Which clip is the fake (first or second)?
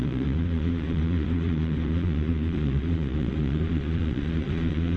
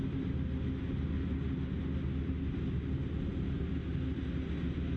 first